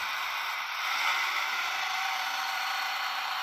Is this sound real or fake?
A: fake